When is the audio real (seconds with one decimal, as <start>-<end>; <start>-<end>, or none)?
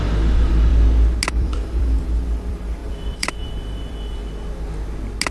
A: 0.7-1.3; 4.2-5.3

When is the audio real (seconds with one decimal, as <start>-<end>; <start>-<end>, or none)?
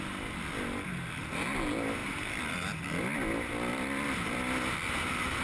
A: 0.0-2.0; 2.8-3.7; 4.4-5.4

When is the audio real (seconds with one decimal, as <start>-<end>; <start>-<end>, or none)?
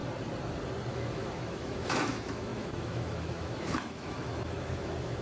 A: 0.0-0.9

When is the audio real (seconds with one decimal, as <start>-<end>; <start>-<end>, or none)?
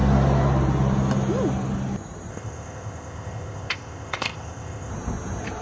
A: 0.0-2.3; 4.9-5.6